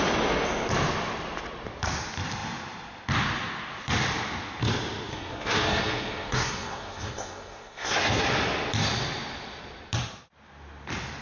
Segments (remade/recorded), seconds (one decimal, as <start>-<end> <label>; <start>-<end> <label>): 0.0-5.1 recorded; 5.1-8.2 remade; 8.2-11.2 recorded